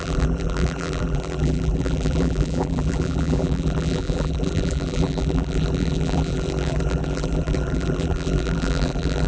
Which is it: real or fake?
fake